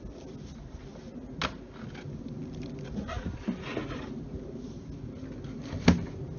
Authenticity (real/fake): real